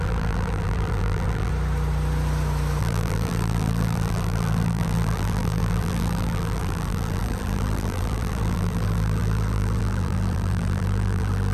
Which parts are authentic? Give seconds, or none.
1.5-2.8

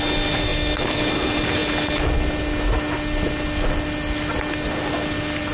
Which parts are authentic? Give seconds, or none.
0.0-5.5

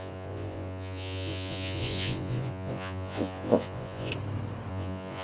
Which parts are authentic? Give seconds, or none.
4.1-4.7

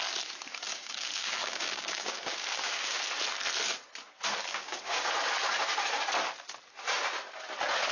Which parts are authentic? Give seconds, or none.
0.0-0.7; 3.0-4.5; 5.1-7.9

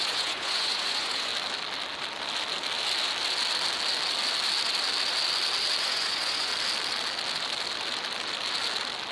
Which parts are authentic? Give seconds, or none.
1.3-5.8; 6.5-9.1

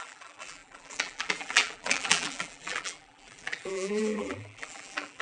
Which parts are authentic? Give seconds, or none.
none